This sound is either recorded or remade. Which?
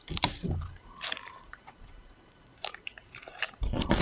remade